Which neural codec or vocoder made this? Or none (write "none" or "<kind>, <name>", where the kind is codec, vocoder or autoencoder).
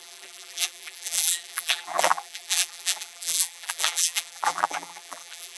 vocoder, BigVGAN v2